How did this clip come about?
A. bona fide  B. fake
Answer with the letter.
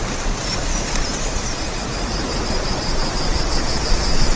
B